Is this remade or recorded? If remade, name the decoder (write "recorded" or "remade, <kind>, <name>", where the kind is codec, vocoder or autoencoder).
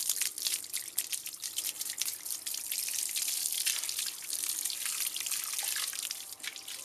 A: recorded